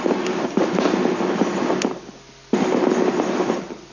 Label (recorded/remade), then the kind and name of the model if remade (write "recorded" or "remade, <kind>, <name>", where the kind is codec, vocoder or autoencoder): recorded